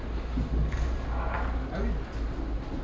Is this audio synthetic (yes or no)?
no